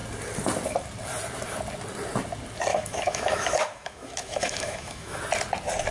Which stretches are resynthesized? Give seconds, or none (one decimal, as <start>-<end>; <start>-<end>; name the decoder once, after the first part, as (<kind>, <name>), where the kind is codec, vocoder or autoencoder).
2.7-5.2 (autoencoder, DAC-VAE)